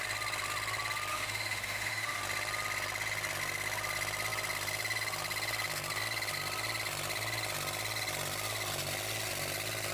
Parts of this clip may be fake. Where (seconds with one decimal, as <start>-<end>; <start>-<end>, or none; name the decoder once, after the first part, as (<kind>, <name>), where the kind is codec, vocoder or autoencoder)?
1.1-2.2 (autoencoder, DAC-VAE)